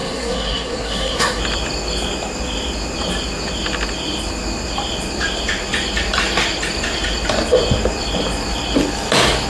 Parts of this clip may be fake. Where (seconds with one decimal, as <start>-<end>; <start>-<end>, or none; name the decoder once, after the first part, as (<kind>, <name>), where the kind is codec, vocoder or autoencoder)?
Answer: 0.0-1.4 (codec, SNAC)